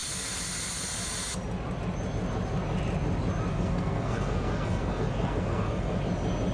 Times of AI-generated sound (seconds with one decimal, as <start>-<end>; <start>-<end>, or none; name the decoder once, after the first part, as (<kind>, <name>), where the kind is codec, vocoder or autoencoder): 3.5-6.0 (codec, SNAC)